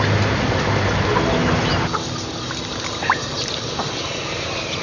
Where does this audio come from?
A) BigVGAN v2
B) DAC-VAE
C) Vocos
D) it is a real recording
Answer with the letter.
D